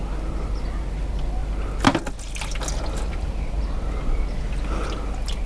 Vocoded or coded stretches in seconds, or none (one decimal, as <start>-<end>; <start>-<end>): none